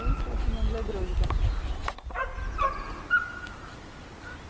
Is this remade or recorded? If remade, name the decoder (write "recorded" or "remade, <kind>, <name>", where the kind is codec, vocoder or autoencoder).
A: recorded